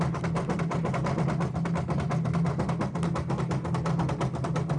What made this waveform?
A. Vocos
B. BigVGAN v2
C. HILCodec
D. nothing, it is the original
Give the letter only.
D